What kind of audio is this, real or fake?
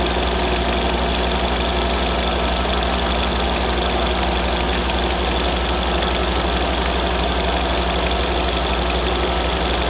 real